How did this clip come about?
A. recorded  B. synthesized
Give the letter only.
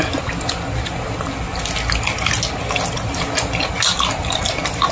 A